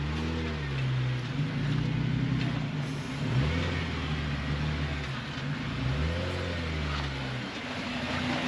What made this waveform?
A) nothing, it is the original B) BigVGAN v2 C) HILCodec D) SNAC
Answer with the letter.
A